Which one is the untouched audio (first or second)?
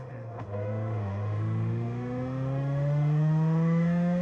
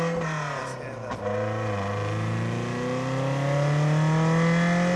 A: second